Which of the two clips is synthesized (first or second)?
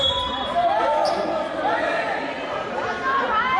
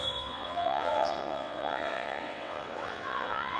second